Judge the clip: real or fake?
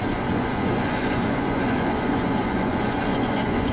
fake